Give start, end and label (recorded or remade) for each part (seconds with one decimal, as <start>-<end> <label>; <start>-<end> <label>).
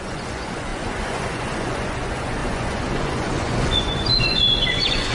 0.0-5.1 remade